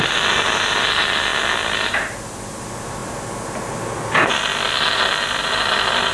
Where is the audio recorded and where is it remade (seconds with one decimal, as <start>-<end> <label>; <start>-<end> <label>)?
0.0-6.1 recorded